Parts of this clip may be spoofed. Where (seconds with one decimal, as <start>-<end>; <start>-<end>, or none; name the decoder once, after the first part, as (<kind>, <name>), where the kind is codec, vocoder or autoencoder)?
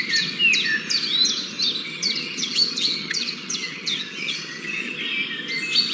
1.8-5.0 (vocoder, HiFi-GAN)